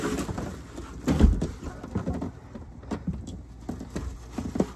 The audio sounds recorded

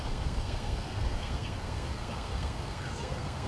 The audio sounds remade